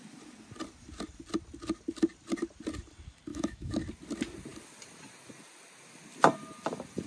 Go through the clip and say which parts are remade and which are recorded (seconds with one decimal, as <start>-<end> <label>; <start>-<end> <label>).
0.0-3.3 recorded; 3.3-3.8 remade; 3.8-7.1 recorded